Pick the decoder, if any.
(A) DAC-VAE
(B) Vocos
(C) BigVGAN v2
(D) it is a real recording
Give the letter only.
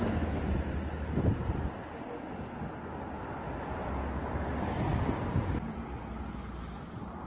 D